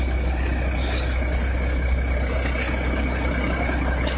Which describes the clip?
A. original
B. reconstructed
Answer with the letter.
A